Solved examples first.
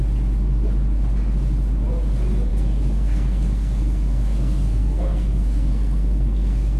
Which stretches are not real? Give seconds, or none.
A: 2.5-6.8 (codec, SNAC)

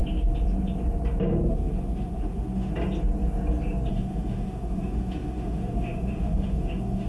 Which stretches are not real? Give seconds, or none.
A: 1.5-2.7 (autoencoder, DAC-VAE); 3.9-7.1

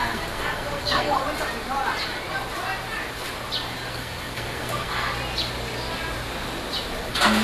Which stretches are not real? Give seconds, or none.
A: 0.0-1.2 (codec, SNAC); 3.9-5.1; 7.0-7.4

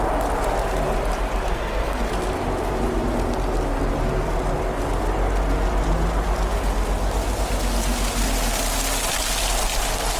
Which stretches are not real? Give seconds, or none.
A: 1.5-2.1 (codec, SNAC)

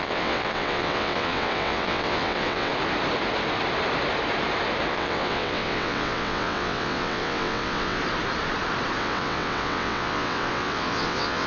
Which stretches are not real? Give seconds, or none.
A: 0.0-2.7 (vocoder, WaveNeXt); 4.9-8.0; 9.0-11.5

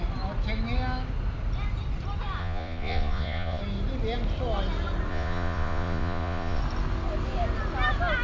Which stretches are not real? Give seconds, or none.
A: 2.4-3.6 (vocoder, Vocos); 5.1-6.6

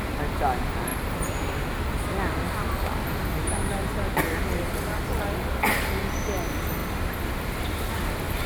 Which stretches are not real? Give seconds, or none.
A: 0.9-1.6 (vocoder, BigVGAN v2)

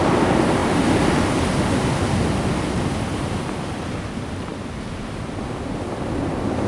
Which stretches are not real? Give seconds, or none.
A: none